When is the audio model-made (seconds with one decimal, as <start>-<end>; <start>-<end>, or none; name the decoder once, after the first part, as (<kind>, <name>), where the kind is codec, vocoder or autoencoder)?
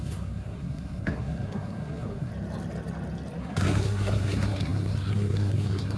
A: 0.0-2.3 (codec, SNAC); 3.4-6.0